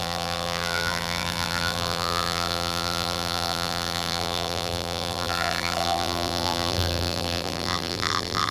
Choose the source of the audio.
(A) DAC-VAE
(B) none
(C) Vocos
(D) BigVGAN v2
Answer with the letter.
D